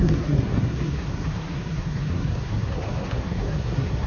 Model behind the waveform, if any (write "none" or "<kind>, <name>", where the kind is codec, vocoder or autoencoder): codec, SNAC